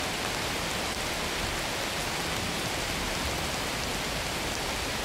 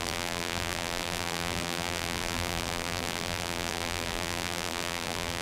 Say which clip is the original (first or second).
first